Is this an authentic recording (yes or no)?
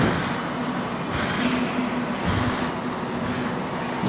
yes